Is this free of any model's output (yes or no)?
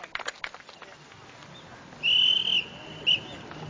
yes